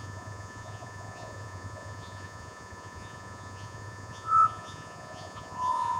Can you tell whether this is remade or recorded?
remade